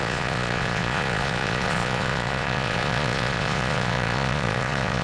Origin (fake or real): fake